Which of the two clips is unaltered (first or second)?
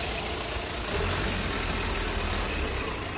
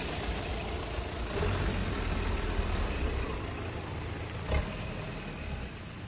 first